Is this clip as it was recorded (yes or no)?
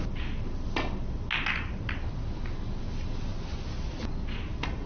yes